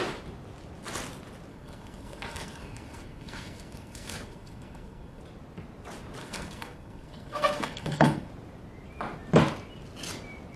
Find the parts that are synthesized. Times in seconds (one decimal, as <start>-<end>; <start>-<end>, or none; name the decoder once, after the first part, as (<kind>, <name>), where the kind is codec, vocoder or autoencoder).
1.5-5.2 (codec, SNAC); 6.2-8.3